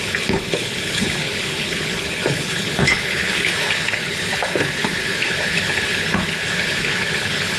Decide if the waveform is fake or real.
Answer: fake